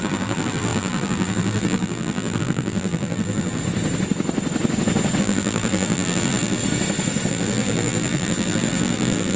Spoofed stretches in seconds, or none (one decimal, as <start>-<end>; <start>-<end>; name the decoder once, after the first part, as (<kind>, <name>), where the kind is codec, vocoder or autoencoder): 0.0-3.6 (vocoder, BigVGAN v2); 5.2-6.6; 7.3-9.4